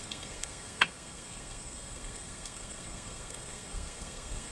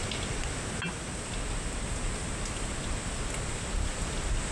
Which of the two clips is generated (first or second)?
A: first